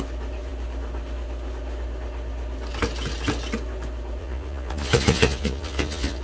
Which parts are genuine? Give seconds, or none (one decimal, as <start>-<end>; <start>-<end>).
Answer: 0.0-4.2